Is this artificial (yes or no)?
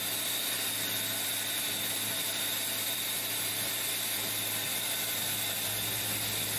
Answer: no